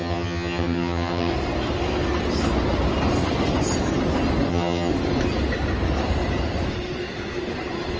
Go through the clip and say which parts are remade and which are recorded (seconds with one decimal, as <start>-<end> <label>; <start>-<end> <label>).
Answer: 0.0-1.3 remade; 1.3-4.5 recorded; 4.5-4.9 remade; 4.9-8.0 recorded